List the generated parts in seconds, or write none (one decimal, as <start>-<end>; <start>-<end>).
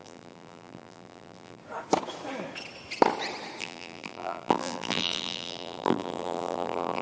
0.0-1.6; 3.6-7.0